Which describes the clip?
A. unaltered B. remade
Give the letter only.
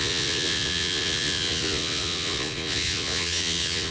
B